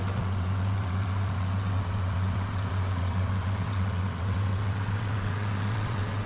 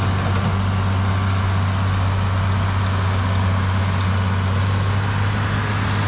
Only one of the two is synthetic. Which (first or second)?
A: first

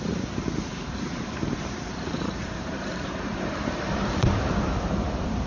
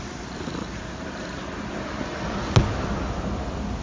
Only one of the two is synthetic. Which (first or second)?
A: first